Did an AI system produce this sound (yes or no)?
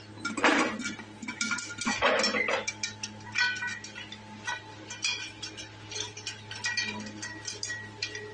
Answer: no